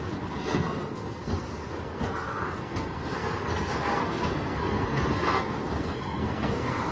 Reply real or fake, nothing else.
fake